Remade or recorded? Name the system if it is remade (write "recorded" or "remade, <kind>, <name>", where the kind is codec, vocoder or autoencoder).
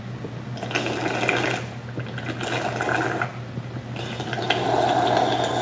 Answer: recorded